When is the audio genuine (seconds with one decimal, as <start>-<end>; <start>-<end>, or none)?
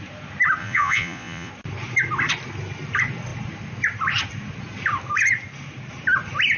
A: 0.0-0.6; 1.5-6.6